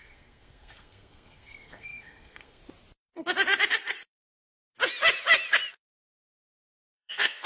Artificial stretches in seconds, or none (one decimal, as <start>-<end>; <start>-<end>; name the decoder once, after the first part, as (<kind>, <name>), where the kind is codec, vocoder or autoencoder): 0.0-2.6 (codec, SNAC); 6.8-7.5